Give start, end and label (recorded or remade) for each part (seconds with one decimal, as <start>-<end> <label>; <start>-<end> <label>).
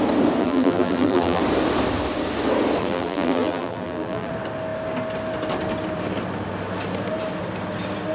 0.0-0.4 recorded; 0.4-1.4 remade; 1.4-2.8 recorded; 2.8-4.3 remade; 4.3-8.1 recorded